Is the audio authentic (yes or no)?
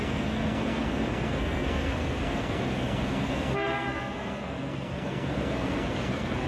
no